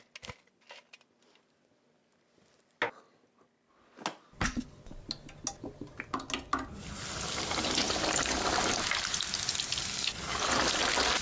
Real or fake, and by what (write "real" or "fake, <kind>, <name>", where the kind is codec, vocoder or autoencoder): real